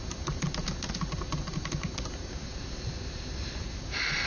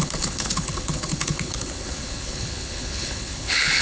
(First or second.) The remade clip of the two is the second